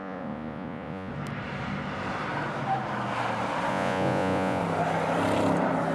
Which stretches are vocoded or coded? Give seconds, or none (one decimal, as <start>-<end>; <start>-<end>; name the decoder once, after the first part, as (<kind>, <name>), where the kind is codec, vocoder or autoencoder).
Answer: 0.0-1.1 (vocoder, Vocos); 3.7-4.6